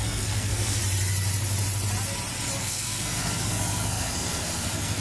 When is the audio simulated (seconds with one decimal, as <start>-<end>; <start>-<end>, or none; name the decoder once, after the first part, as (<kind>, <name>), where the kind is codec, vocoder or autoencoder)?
0.0-0.8 (codec, SNAC); 2.6-5.0